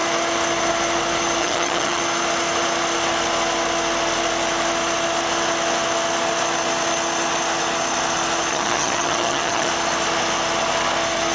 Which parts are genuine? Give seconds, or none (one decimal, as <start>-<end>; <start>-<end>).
0.0-1.4; 2.0-8.5; 9.7-11.3